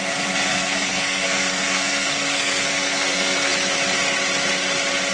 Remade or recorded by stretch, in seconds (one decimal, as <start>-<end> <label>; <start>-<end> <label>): 0.0-0.5 recorded; 0.5-3.5 remade; 3.5-5.1 recorded